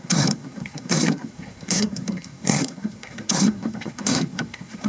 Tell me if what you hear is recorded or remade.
remade